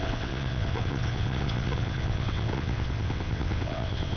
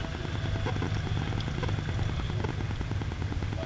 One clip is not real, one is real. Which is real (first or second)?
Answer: second